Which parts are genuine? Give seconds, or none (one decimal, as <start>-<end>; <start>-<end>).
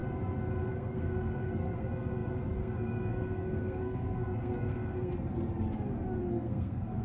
0.0-0.7; 5.1-6.3